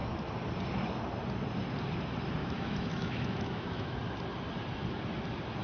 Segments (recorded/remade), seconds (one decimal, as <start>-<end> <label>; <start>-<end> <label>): 0.0-2.4 recorded; 2.4-4.0 remade; 4.0-5.6 recorded